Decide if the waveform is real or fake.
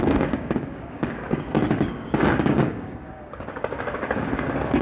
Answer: fake